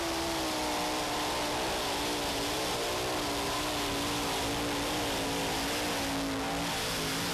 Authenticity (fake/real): real